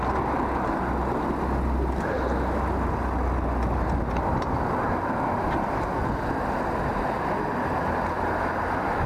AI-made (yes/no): no